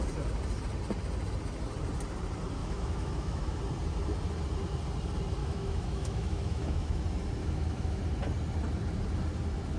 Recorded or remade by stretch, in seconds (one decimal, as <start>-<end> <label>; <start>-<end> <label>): 0.0-2.6 recorded; 2.6-3.6 remade; 3.6-5.4 recorded; 5.4-7.0 remade; 7.0-7.4 recorded; 7.4-8.0 remade; 8.0-9.8 recorded